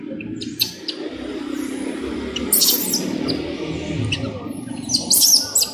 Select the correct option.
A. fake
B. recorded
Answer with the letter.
B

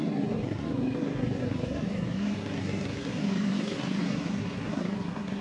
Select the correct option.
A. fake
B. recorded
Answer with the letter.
A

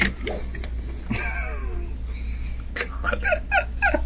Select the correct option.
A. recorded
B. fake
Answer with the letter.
A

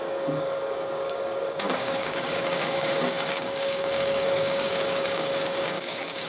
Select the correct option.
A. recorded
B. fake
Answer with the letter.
B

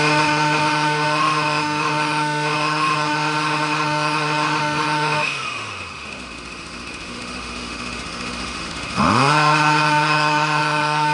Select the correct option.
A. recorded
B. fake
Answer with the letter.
B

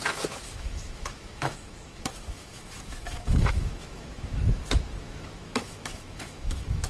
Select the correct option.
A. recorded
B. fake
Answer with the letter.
B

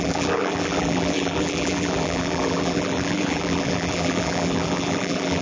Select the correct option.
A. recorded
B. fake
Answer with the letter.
B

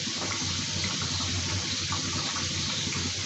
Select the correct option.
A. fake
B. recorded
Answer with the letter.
B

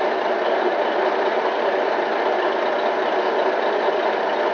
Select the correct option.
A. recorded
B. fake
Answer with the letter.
A